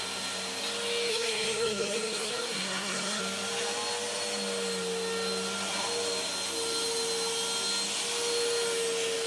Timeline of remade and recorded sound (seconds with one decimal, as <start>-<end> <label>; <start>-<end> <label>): 0.0-1.1 recorded; 1.1-3.2 remade; 3.2-9.3 recorded